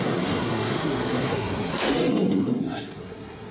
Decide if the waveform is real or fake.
fake